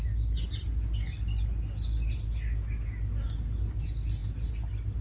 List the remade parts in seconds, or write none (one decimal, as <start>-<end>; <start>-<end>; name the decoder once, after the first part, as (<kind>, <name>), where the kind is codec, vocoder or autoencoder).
none